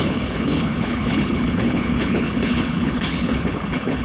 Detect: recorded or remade remade